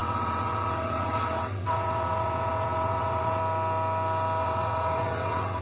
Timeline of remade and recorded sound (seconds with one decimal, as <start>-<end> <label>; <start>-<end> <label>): 0.0-3.4 remade; 3.4-4.4 recorded; 4.4-5.6 remade